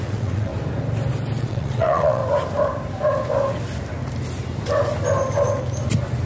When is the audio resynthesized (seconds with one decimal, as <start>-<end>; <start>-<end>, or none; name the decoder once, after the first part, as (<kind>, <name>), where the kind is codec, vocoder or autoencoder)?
0.0-0.5 (vocoder, WaveNeXt); 1.4-2.2